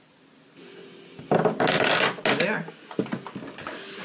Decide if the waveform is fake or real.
real